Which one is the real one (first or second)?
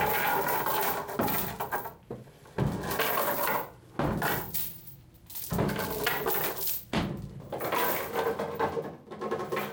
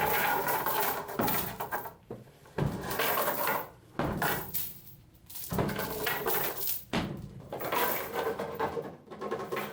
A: first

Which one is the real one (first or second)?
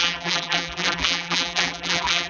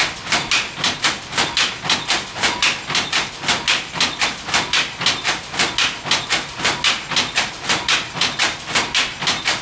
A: second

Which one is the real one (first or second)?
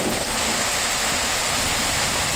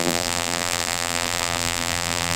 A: first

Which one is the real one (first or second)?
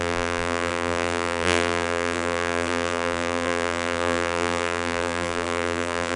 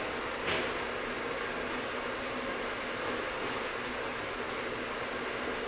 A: second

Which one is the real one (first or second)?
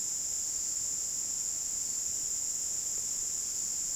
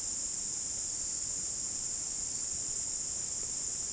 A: first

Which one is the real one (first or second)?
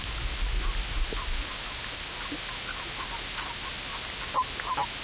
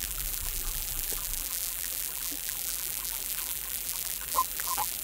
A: first